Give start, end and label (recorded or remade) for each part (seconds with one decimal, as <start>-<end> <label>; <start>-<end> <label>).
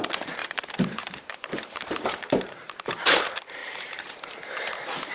0.0-0.4 recorded; 0.4-3.2 remade; 3.2-3.6 recorded; 3.6-4.2 remade; 4.2-5.1 recorded